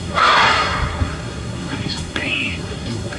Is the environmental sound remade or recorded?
remade